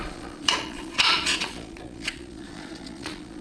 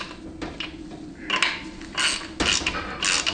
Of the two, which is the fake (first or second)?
first